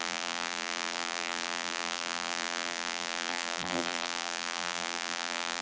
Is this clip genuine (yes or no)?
no